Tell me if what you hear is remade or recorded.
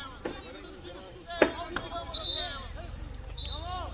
remade